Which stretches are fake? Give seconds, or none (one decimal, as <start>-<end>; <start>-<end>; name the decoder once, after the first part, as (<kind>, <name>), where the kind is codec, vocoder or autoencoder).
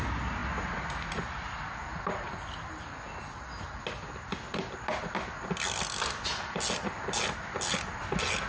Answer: none